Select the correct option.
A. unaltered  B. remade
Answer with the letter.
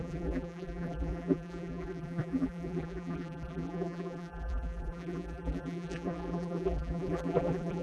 B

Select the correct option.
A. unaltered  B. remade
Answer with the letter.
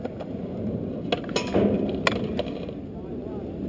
A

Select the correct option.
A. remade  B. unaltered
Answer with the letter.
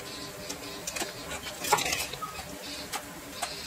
B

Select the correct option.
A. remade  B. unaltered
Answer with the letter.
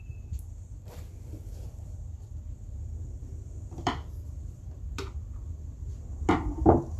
A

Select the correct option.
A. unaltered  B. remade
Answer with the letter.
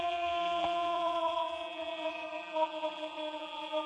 B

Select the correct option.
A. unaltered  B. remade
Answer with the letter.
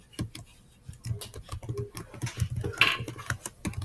A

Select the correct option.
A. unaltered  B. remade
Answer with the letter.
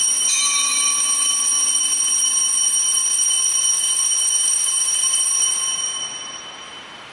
B